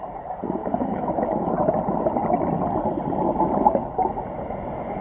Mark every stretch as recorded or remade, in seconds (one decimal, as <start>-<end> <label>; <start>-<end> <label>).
0.0-0.6 recorded; 0.6-1.5 remade; 1.5-5.0 recorded